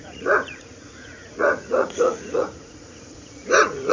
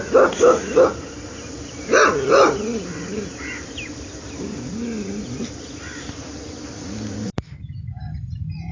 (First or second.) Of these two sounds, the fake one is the first